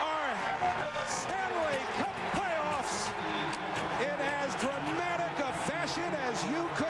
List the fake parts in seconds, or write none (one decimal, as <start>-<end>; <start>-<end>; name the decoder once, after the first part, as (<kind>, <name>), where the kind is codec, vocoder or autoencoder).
0.4-1.3 (codec, SNAC)